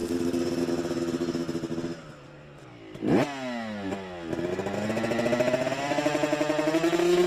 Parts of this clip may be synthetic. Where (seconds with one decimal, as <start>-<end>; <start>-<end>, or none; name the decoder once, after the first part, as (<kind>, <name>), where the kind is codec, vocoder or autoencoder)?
none